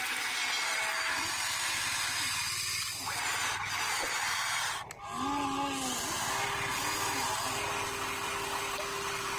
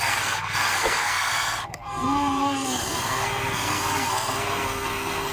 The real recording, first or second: first